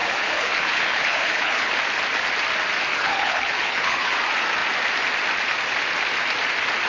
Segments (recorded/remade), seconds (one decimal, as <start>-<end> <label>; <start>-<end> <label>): 0.0-1.7 remade; 1.7-2.9 recorded; 2.9-4.1 remade; 4.1-6.9 recorded